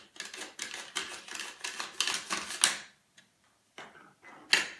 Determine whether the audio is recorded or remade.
recorded